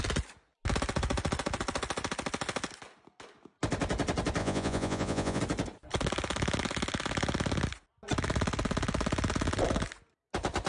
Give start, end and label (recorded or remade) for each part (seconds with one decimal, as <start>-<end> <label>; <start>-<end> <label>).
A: 0.0-4.4 recorded; 4.4-5.4 remade; 5.4-10.7 recorded